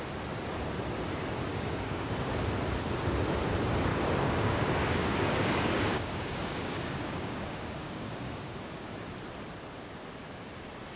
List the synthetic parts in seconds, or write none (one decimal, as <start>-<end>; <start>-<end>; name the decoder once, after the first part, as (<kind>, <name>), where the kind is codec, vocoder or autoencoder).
1.5-2.1 (codec, DAC); 3.9-8.6